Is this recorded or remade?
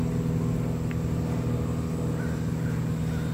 recorded